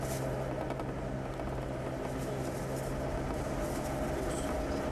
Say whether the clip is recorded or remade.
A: recorded